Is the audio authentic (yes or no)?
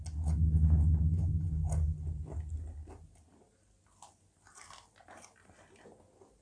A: yes